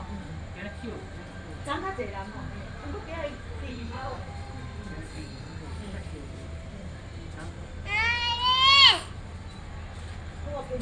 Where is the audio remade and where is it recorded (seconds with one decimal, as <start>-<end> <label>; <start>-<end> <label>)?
0.0-3.7 recorded; 3.7-4.2 remade; 4.2-5.1 recorded; 5.1-5.6 remade; 5.6-10.8 recorded